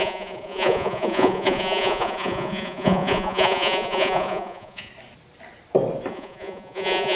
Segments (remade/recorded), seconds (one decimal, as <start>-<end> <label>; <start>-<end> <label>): 0.0-4.9 remade; 4.9-6.1 recorded; 6.1-7.2 remade